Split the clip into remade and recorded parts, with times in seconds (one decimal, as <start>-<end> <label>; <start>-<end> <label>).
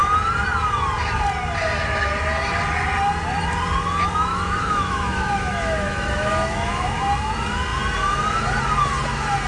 0.0-4.3 recorded; 4.3-7.0 remade; 7.0-9.5 recorded